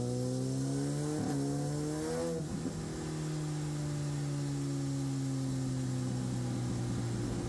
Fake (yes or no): no